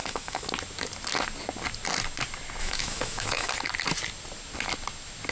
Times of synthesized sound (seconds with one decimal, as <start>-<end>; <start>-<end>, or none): 0.0-0.5; 2.6-3.5